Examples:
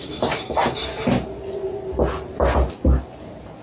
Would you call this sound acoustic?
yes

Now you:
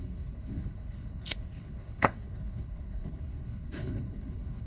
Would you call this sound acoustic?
no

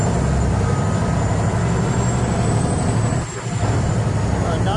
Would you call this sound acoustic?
yes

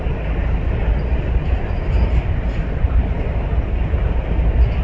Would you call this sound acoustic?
yes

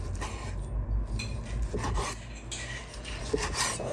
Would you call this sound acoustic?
yes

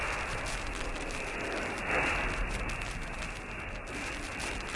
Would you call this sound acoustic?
yes